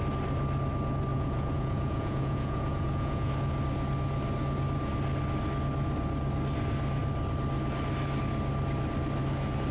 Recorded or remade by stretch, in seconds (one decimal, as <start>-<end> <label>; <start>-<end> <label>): 0.0-1.1 recorded; 1.1-3.3 remade; 3.3-9.7 recorded